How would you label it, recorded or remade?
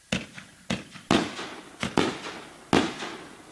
recorded